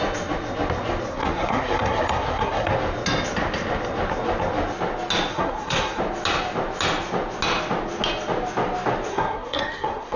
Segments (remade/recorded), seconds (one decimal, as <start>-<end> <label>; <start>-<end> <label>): 0.0-1.1 recorded; 1.1-2.7 remade; 2.7-5.3 recorded; 5.3-6.0 remade; 6.0-9.1 recorded; 9.1-10.2 remade